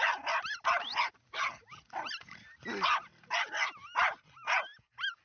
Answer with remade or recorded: recorded